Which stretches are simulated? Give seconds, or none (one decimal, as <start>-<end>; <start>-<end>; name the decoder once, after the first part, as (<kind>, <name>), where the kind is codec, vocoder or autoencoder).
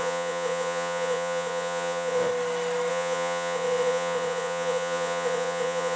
0.0-2.3 (vocoder, Vocos); 2.9-6.0